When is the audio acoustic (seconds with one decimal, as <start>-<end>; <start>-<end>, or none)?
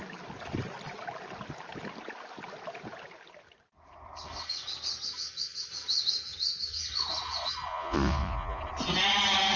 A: 0.0-7.7; 8.6-9.6